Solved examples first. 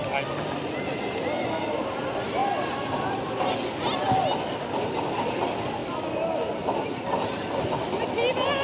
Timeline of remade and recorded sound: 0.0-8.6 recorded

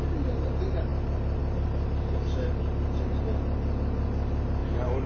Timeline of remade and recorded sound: 0.0-5.1 recorded

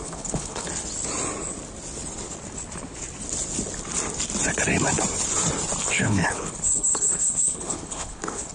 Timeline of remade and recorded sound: 0.0-0.7 remade; 0.7-5.8 recorded; 5.8-8.5 remade

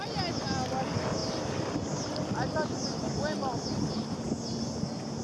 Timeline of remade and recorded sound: 0.0-5.2 recorded

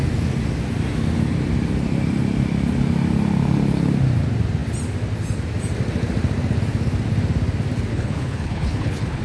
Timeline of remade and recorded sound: 0.0-7.9 recorded; 7.9-9.2 remade

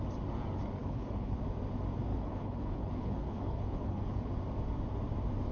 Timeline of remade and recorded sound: 0.0-0.8 recorded; 0.8-1.4 remade; 1.4-2.1 recorded; 2.1-4.3 remade; 4.3-5.5 recorded

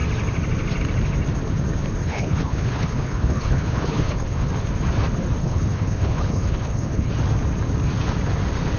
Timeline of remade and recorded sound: 0.0-2.0 recorded; 2.0-4.5 remade; 4.5-5.4 recorded; 5.4-7.1 remade; 7.1-8.8 recorded